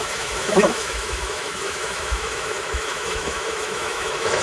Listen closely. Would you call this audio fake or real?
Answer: fake